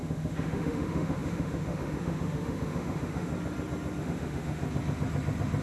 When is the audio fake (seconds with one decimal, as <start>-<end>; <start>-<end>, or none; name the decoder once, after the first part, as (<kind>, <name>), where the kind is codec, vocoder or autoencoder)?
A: 0.0-3.3 (autoencoder, DAC-VAE); 4.0-4.6